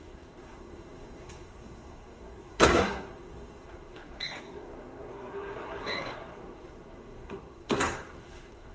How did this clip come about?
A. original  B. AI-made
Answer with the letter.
B